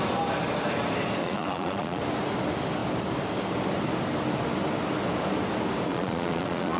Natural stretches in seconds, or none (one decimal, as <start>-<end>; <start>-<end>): 0.0-1.2; 2.0-5.9